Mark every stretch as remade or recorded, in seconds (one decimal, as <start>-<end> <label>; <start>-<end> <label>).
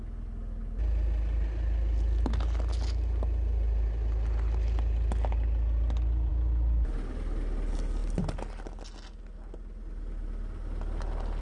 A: 0.0-11.4 recorded